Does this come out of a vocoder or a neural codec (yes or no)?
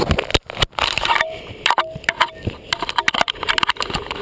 no